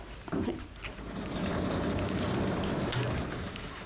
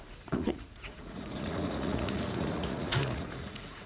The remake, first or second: second